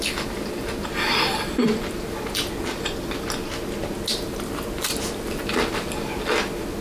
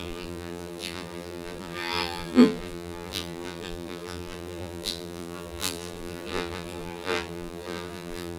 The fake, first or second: second